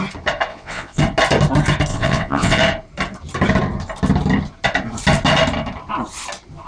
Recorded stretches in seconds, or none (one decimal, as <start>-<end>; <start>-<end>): 0.0-0.5; 1.0-1.9; 2.6-6.7